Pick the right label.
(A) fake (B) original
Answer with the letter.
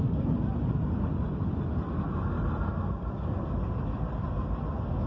B